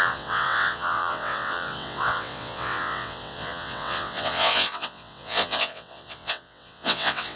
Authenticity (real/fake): fake